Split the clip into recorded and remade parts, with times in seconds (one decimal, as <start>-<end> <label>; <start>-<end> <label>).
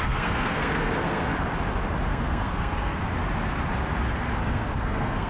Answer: 0.0-1.3 remade; 1.3-2.1 recorded; 2.1-3.0 remade; 3.0-4.4 recorded; 4.4-5.3 remade